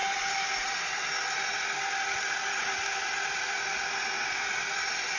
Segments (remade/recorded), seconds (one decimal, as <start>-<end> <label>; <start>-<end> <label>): 0.0-5.2 recorded